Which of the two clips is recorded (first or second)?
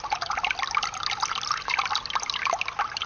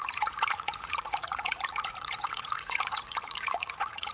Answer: first